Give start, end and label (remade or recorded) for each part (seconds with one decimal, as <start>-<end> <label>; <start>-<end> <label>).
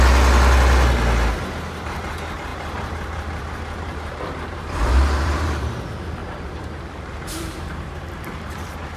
0.0-2.5 recorded; 2.5-5.8 remade; 5.8-6.2 recorded; 6.2-8.2 remade; 8.2-9.0 recorded